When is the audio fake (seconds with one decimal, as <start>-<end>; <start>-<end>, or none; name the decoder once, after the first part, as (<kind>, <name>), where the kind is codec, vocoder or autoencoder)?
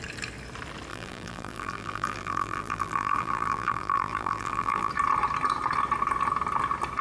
0.9-4.9 (vocoder, BigVGAN v2)